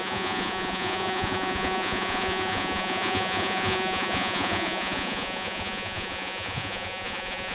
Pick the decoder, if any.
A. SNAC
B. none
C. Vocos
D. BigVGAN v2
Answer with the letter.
C